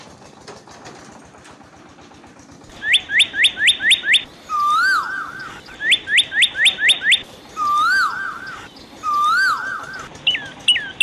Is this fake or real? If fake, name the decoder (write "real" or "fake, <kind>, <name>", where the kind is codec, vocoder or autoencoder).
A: real